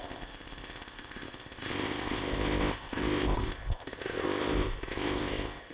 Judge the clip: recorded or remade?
remade